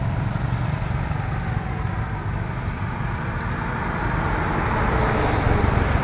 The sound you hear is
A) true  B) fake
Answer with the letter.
A